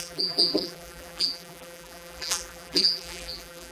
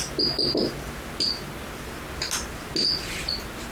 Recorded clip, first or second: second